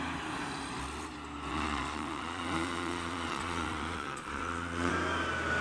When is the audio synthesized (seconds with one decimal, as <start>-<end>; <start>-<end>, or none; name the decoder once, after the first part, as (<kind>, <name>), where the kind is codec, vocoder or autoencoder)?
1.5-4.9 (vocoder, Vocos)